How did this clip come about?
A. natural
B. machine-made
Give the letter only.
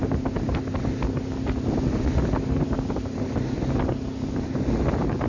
A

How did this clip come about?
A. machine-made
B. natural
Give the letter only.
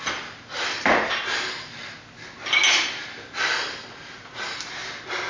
B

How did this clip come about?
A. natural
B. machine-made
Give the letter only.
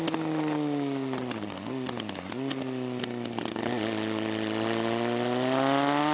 A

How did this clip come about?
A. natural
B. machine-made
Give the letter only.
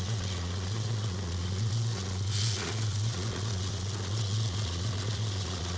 B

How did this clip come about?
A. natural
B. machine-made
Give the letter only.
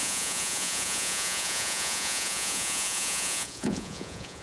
B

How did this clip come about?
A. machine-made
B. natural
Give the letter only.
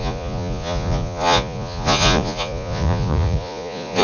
A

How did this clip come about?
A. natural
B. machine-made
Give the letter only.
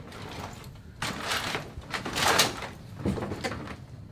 A